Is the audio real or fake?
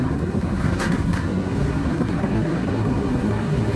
fake